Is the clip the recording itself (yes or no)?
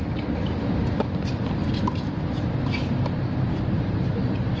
yes